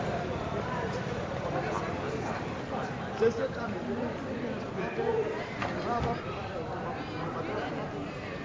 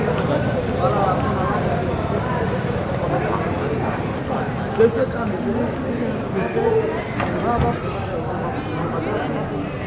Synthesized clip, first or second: first